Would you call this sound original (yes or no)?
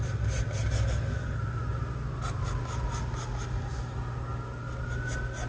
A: yes